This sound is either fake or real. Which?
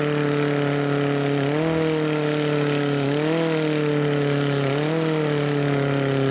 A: real